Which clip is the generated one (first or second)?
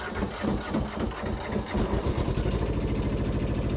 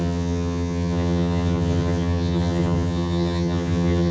second